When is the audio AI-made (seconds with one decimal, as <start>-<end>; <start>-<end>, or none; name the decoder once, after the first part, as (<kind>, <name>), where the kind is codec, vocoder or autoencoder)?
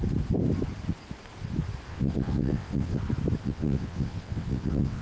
1.9-3.0 (vocoder, WaveNeXt); 3.4-5.0